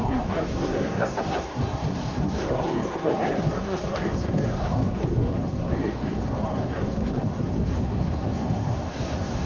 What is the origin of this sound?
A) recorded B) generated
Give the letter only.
B